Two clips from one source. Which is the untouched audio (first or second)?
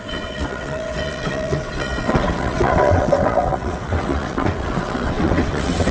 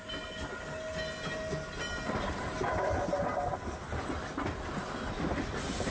second